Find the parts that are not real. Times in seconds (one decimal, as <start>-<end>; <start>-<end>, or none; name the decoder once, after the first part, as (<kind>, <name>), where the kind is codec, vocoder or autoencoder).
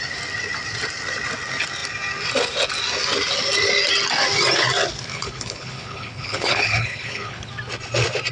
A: 5.1-7.5 (codec, HILCodec)